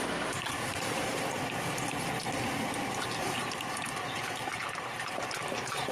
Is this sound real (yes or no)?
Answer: yes